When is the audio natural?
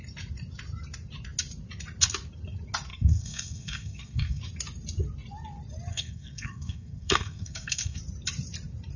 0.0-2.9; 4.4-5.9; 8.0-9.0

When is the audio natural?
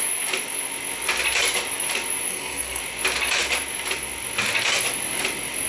0.0-2.3; 2.8-5.7